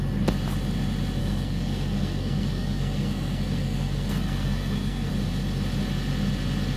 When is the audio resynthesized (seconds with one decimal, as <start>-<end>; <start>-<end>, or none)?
1.2-5.1

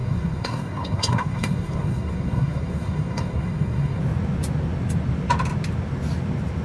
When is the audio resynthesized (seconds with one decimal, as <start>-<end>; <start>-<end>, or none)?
0.0-4.0